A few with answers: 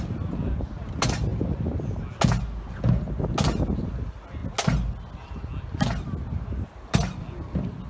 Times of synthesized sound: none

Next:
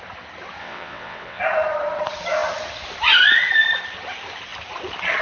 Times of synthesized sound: 0.6-1.4 (vocoder, WaveNeXt)

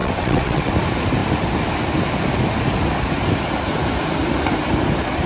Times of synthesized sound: 0.0-0.7 (vocoder, WaveNeXt)

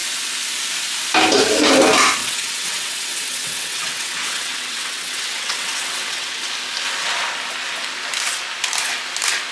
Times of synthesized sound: 2.2-6.5 (vocoder, WaveNeXt)